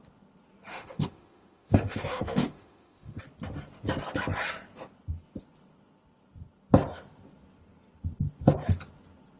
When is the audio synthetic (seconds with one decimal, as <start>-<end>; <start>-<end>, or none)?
0.7-3.2